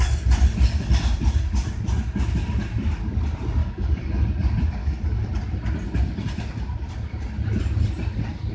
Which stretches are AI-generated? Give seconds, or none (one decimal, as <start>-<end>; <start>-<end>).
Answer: 3.6-4.1; 4.8-5.3